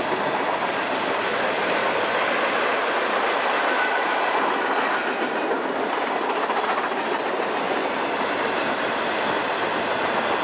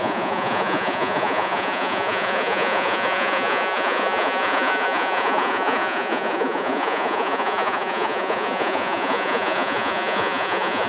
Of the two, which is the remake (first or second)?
second